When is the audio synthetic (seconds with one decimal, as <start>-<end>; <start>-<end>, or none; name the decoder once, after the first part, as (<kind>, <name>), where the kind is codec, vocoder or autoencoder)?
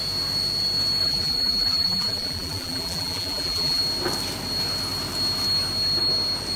1.0-3.8 (vocoder, BigVGAN v2)